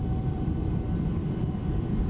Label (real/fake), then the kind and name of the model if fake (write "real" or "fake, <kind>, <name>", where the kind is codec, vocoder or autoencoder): fake, vocoder, BigVGAN v2